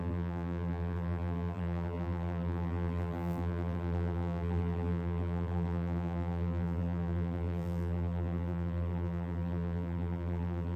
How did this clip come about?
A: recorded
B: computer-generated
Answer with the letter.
B